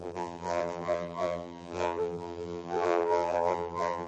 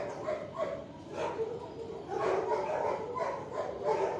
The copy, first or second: first